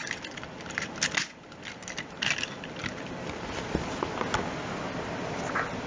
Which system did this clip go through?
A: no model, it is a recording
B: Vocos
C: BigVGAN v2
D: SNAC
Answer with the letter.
A